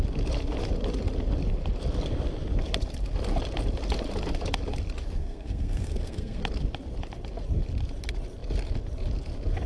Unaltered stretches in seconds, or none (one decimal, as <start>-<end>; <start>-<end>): 0.0-5.2; 6.4-9.7